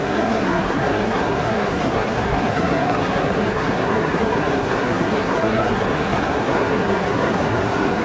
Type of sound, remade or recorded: remade